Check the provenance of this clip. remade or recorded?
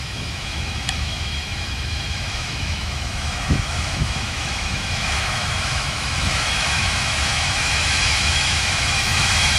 remade